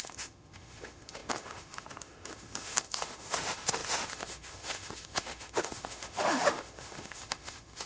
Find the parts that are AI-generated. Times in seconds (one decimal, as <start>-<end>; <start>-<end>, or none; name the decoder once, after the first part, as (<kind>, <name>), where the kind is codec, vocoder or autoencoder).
0.0-7.9 (autoencoder, DAC-VAE)

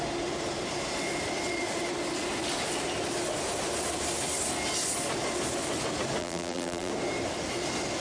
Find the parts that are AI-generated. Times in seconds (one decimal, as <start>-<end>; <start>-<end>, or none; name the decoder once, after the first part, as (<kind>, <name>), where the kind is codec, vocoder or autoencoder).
6.2-6.9 (vocoder, BigVGAN v2)

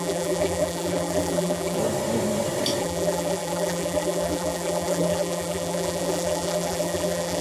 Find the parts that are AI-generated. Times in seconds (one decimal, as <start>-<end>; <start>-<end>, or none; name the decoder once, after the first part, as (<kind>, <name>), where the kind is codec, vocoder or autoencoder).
0.0-1.8 (vocoder, BigVGAN v2); 2.8-7.4

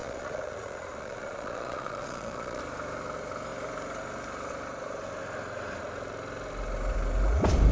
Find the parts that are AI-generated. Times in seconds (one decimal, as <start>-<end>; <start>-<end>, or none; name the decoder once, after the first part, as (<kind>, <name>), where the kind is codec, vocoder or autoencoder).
0.0-2.6 (vocoder, Vocos)